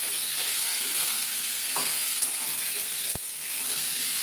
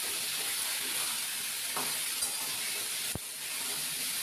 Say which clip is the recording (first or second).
second